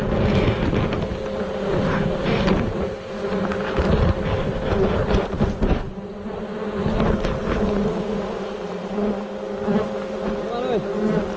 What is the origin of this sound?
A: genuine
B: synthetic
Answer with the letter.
A